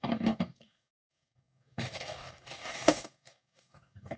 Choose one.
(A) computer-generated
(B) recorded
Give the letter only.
A